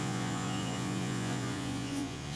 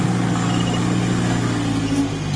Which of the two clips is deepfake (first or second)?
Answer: first